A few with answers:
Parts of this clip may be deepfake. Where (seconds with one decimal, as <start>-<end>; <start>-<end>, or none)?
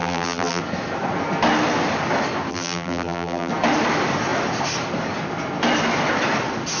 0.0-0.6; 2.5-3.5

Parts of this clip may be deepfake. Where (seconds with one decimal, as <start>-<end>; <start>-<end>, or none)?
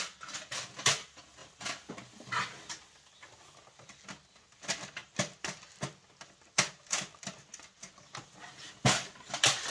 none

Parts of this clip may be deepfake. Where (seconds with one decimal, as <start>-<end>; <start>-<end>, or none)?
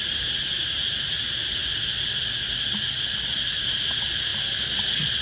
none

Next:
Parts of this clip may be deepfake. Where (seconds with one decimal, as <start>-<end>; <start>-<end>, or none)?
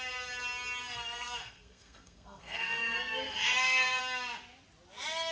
0.8-4.0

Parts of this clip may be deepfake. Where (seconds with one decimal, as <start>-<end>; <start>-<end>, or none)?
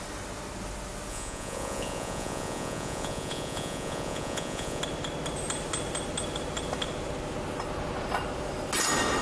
1.1-4.8